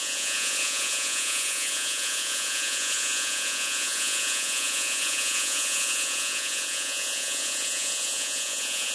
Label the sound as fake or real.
fake